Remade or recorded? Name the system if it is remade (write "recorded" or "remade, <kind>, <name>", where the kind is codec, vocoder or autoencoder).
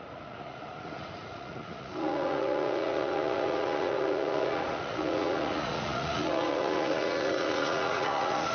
remade, vocoder, Vocos